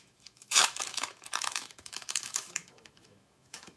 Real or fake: fake